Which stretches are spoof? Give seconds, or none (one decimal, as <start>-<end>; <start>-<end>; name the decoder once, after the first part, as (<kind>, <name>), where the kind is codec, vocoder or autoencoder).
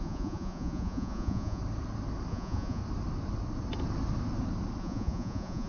0.0-1.6 (vocoder, Vocos); 2.3-2.8; 4.8-5.7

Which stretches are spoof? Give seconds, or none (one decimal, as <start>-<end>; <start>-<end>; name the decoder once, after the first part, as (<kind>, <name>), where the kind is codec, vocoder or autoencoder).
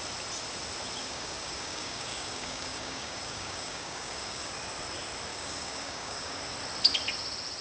1.0-4.5 (codec, DAC); 5.3-6.4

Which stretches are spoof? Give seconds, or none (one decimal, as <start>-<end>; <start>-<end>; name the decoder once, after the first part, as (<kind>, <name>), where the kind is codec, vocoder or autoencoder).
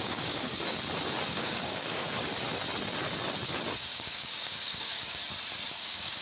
0.0-0.5 (codec, DAC); 1.3-2.3; 3.8-5.2; 5.7-6.2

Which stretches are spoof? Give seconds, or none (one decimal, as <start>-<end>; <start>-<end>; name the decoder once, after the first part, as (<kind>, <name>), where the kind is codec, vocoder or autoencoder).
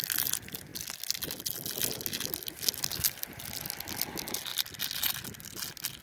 none